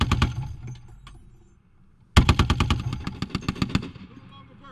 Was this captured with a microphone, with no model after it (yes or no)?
yes